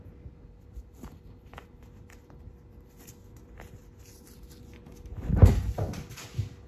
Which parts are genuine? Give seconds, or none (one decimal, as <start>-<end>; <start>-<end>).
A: 0.0-6.7